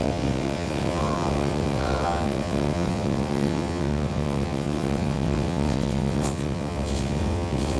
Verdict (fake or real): fake